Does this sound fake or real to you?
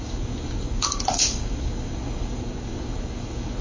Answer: fake